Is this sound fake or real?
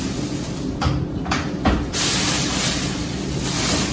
real